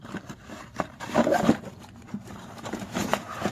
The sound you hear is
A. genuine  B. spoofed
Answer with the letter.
B